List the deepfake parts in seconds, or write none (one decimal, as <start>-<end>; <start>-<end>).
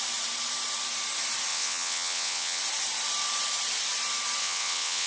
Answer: 1.5-2.6; 4.4-5.1